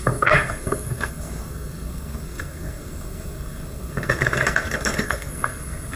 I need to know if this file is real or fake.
fake